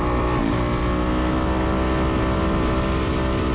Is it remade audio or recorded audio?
recorded